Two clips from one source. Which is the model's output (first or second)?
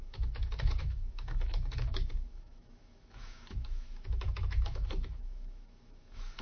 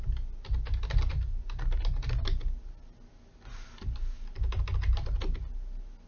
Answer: first